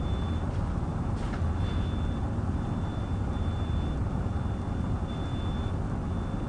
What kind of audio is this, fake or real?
real